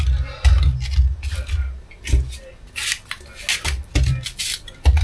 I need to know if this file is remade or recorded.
recorded